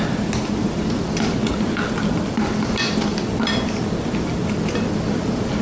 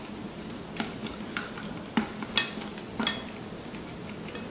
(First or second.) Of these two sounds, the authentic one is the second